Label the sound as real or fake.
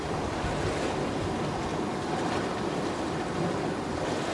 real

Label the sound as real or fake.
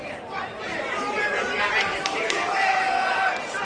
fake